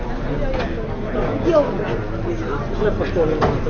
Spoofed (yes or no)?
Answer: no